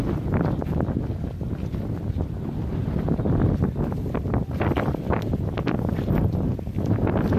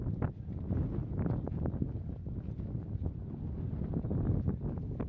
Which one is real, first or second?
second